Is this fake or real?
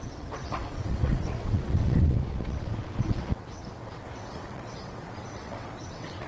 fake